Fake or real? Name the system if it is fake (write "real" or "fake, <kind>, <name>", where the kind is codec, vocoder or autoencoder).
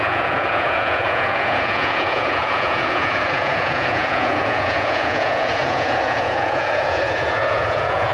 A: fake, vocoder, Vocos